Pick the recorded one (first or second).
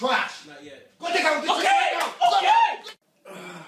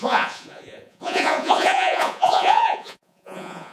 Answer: first